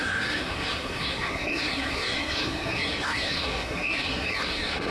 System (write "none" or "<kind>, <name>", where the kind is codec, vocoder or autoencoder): codec, SNAC